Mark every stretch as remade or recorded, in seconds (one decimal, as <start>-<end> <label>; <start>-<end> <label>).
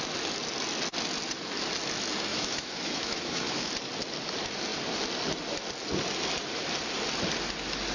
0.0-2.3 recorded; 2.3-3.7 remade; 3.7-7.9 recorded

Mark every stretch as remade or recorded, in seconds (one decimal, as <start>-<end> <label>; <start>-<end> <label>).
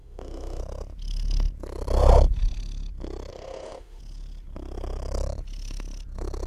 0.0-0.6 remade; 0.6-3.3 recorded; 3.3-4.0 remade; 4.0-6.5 recorded